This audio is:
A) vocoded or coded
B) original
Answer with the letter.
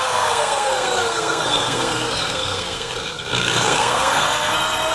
A